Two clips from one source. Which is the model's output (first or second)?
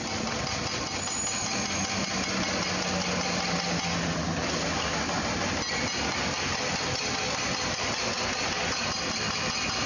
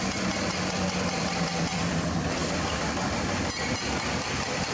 second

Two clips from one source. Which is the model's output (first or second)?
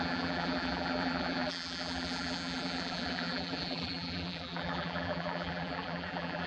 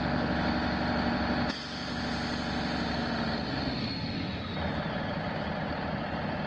first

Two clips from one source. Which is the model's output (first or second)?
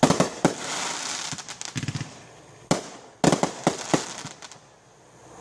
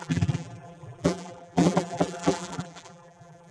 second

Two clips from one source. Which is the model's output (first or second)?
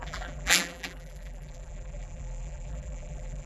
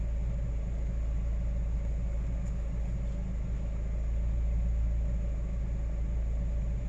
first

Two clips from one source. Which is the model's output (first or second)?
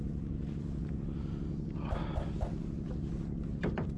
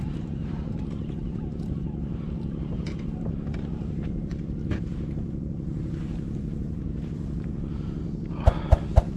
second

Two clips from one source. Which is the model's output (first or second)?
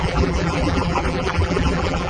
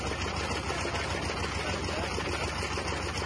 first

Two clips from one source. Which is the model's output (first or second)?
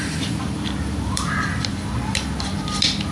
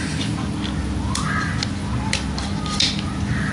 first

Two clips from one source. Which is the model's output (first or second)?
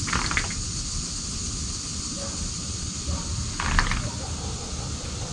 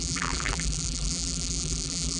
second